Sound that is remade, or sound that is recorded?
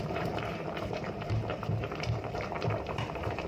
remade